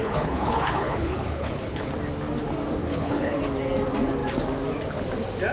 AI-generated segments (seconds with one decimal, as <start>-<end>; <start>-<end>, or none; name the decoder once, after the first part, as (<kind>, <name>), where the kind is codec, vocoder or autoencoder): 0.0-1.9 (codec, HILCodec); 2.8-3.4